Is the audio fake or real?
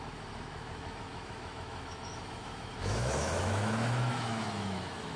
fake